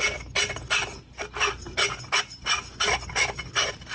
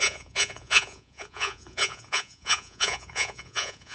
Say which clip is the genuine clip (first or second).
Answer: first